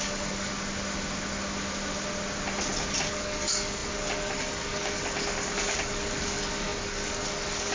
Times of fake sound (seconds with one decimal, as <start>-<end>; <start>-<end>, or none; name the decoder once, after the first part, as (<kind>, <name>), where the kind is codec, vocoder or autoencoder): 0.0-0.5 (codec, DAC); 3.1-7.7